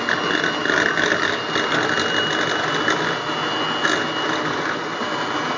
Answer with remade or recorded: recorded